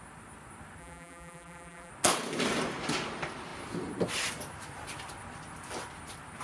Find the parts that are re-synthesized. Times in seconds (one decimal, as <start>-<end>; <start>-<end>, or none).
0.8-1.9